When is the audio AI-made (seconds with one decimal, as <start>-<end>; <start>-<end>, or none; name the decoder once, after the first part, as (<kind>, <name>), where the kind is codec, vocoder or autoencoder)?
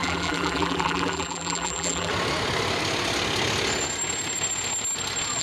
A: 0.0-2.1 (vocoder, BigVGAN v2)